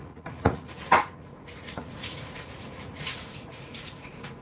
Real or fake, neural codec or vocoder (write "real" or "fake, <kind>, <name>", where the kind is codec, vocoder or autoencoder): fake, vocoder, Vocos